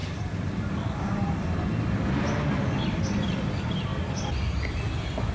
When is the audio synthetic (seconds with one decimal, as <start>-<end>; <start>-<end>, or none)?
3.2-3.9; 4.7-5.3